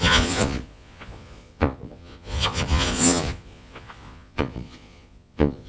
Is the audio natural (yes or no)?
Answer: no